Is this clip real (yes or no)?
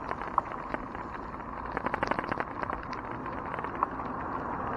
yes